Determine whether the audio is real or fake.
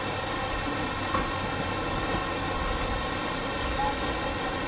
real